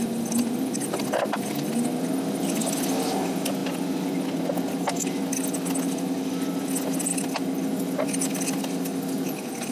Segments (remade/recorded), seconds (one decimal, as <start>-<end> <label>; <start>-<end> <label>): 0.0-9.7 recorded